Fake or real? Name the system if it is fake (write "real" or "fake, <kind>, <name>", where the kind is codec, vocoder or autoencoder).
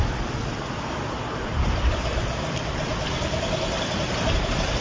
fake, vocoder, BigVGAN v2